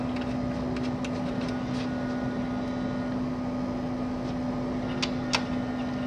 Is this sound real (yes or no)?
yes